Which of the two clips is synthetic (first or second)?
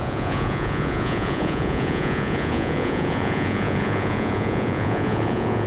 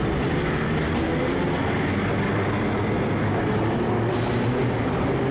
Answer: first